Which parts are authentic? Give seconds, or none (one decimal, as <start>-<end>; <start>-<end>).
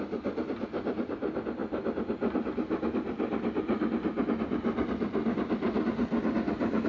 0.0-6.9